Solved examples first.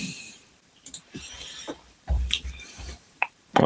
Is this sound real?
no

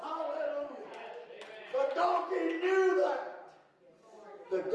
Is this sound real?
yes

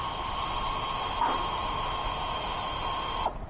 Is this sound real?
no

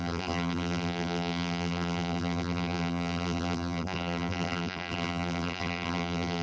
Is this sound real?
no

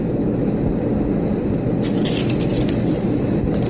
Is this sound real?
yes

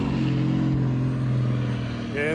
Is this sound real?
yes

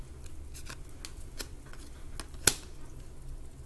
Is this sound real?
yes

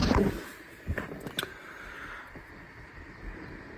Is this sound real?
yes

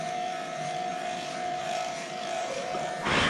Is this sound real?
no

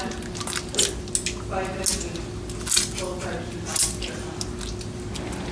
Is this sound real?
yes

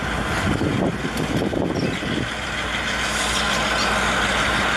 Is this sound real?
yes